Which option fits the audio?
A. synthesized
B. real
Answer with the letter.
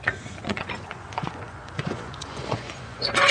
A